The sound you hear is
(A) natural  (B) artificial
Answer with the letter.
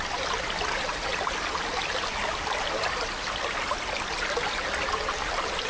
A